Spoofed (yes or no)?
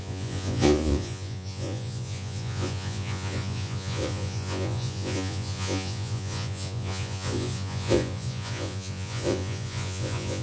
yes